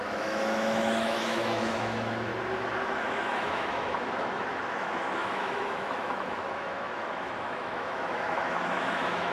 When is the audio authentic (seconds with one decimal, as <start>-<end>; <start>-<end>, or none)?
2.3-2.9